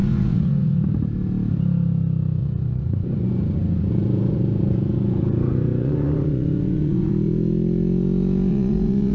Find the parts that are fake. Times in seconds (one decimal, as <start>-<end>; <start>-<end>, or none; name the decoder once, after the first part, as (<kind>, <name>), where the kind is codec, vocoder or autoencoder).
0.0-0.8 (vocoder, Vocos); 2.4-7.1; 8.5-9.1